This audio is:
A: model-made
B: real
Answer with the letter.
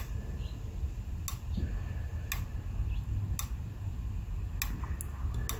B